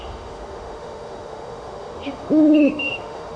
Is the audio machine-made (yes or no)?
yes